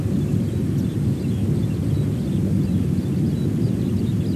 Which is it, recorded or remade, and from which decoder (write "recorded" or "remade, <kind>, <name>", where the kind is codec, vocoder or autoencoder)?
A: recorded